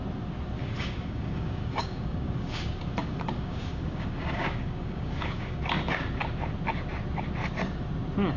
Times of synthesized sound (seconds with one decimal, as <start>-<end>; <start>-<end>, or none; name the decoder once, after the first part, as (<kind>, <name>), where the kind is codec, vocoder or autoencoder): 0.6-5.6 (codec, DAC)